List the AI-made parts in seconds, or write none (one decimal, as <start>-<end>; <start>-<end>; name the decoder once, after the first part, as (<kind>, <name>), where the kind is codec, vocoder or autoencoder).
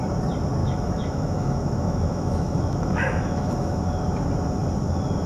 0.6-3.8 (autoencoder, DAC-VAE)